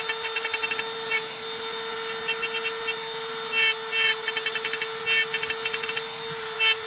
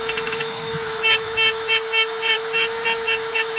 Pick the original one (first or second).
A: first